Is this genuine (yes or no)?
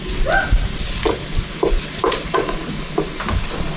yes